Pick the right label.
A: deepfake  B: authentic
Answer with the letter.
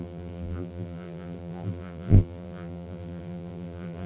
A